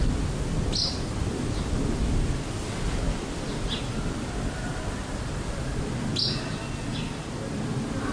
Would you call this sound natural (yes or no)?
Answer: yes